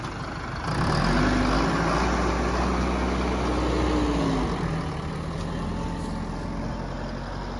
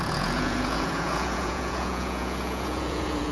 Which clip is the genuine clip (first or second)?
first